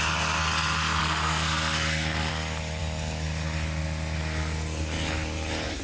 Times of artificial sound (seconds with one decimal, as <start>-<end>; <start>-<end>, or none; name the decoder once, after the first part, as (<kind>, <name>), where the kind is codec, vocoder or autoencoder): 1.0-2.3 (codec, SNAC)